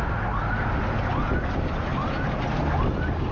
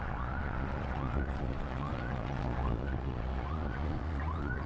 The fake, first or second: second